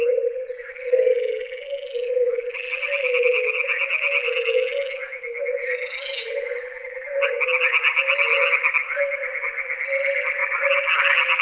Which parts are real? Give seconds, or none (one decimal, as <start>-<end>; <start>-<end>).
0.0-11.4